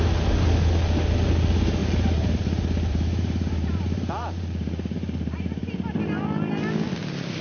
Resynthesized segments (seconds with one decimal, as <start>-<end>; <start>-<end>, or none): 1.8-5.9

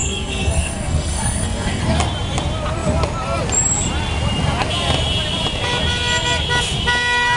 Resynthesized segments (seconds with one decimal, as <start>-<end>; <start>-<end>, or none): 0.0-1.8

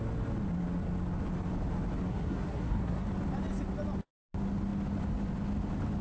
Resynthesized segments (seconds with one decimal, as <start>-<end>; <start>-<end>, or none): 2.1-3.1

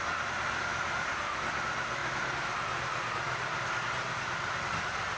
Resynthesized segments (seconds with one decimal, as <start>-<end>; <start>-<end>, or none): none

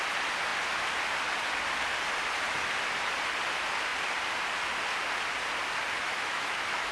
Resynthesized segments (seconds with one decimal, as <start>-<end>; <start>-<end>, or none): 6.0-6.9

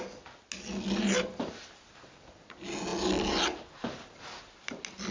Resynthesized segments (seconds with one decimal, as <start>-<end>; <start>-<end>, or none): none